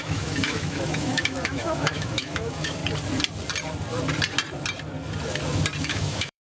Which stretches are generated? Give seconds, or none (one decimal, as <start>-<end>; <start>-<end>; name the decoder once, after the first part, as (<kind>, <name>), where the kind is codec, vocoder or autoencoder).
0.0-2.8 (autoencoder, DAC-VAE); 5.8-6.5